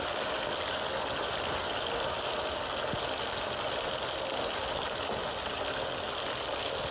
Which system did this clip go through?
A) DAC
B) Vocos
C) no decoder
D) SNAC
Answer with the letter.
C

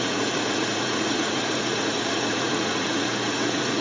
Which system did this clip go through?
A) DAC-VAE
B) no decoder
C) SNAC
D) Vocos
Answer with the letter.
D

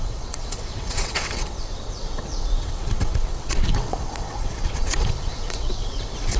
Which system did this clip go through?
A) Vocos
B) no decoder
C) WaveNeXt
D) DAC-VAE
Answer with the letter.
C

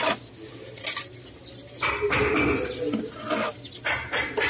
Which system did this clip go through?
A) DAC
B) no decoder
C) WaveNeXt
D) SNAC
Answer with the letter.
B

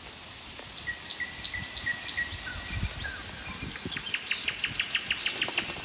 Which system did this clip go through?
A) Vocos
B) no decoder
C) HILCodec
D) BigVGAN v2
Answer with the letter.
B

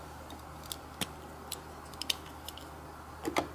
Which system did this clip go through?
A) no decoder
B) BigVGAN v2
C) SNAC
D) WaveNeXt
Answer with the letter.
A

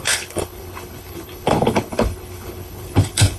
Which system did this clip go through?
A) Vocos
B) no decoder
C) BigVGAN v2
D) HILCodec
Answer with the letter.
D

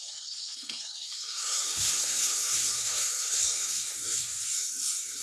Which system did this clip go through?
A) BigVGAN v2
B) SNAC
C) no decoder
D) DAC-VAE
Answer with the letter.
B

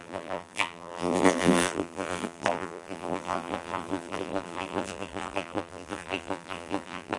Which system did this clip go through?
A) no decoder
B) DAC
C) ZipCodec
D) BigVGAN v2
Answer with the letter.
D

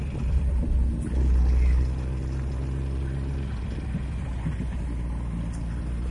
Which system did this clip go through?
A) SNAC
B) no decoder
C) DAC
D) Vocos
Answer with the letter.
B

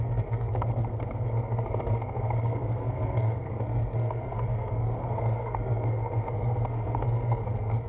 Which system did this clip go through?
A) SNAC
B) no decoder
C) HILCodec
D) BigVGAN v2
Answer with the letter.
A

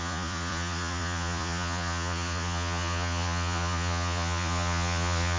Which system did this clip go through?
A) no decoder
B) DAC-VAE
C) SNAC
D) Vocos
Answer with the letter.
D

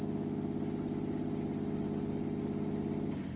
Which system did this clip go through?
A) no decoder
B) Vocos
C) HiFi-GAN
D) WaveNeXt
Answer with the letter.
A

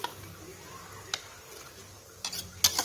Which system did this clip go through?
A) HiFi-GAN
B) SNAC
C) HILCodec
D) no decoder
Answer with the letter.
D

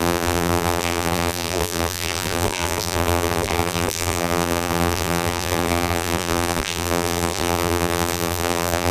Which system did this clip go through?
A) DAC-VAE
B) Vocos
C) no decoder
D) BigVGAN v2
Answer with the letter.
D